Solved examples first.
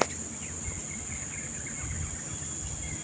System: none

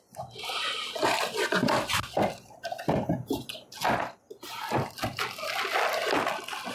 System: none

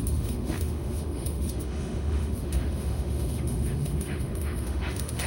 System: autoencoder, DAC-VAE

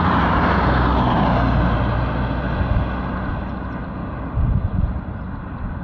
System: none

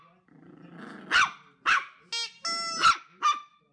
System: none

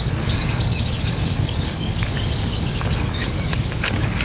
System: codec, DAC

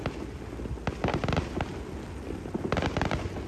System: none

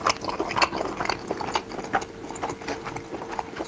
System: none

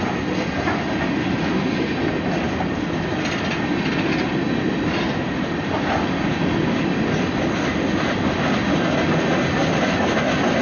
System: none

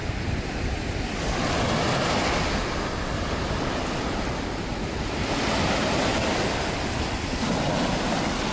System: none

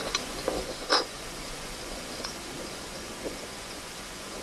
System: vocoder, Vocos